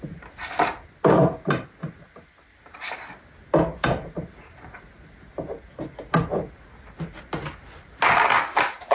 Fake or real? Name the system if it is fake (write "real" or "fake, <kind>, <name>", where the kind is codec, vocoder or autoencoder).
real